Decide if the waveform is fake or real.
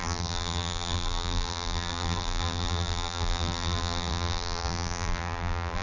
fake